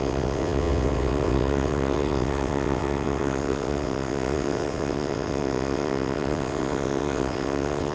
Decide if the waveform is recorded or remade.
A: remade